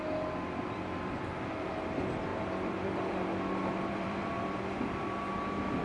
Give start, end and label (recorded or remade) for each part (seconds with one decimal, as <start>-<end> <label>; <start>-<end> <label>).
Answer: 0.0-2.3 recorded; 2.3-4.3 remade; 4.3-5.8 recorded